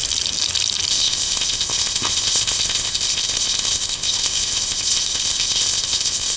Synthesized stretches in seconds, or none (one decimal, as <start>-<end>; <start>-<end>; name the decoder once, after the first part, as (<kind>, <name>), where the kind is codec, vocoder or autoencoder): 0.9-6.4 (codec, ZipCodec)